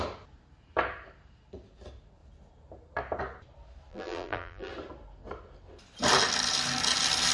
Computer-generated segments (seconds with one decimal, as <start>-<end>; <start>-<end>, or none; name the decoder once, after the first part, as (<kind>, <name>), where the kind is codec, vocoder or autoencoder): 3.9-4.7 (vocoder, BigVGAN v2)